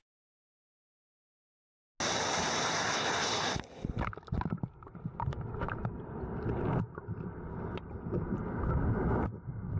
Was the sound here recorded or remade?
recorded